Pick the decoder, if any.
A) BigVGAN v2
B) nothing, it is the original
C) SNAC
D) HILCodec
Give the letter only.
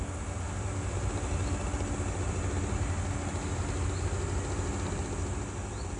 B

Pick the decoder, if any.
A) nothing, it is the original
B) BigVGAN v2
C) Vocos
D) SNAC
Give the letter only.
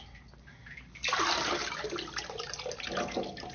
A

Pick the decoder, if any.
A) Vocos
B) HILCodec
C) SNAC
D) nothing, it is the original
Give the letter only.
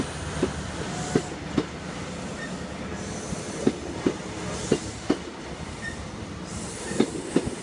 D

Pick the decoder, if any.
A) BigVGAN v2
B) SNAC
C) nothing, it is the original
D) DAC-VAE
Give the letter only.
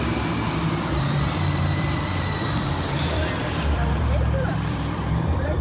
A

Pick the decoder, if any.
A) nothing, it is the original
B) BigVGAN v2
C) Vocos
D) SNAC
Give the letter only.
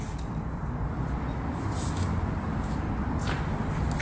A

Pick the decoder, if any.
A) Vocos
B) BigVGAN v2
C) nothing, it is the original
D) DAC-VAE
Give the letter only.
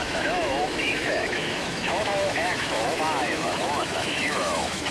D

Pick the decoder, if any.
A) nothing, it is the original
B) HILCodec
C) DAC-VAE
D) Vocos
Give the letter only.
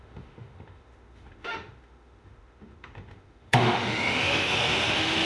C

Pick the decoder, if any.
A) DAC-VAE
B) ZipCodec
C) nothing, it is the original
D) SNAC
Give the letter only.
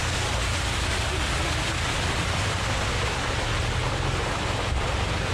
C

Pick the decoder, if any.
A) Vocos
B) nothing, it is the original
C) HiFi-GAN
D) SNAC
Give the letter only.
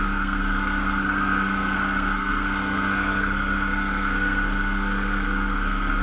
D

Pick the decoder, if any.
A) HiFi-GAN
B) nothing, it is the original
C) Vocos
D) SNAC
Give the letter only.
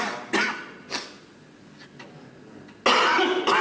B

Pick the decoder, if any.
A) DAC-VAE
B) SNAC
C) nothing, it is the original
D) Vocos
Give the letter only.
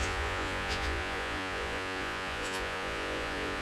D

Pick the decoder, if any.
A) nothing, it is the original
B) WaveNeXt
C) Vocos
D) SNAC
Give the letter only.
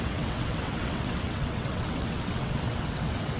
B